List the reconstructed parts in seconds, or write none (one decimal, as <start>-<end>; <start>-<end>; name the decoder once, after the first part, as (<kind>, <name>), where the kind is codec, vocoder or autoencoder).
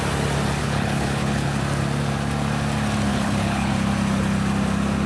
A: 0.6-1.6 (codec, HILCodec); 3.1-3.7